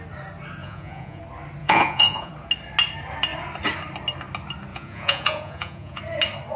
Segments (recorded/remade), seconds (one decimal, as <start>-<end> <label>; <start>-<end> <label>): 0.0-0.6 recorded; 0.6-1.2 remade; 1.2-1.6 recorded; 1.6-2.3 remade; 2.3-4.7 recorded; 4.7-6.0 remade; 6.0-6.6 recorded